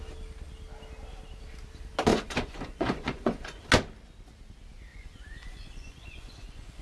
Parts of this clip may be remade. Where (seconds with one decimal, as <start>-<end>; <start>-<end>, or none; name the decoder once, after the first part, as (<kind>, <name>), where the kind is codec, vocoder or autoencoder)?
2.1-3.6 (vocoder, Vocos); 4.9-6.8